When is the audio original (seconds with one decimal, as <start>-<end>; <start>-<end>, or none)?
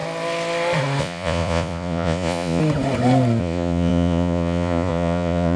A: 0.0-1.0; 2.6-3.4